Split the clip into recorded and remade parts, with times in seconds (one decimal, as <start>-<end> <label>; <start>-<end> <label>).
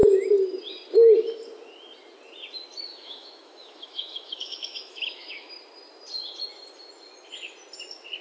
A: 0.0-2.9 recorded; 2.9-5.5 remade; 5.5-8.2 recorded